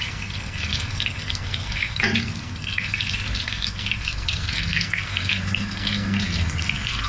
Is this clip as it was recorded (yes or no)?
no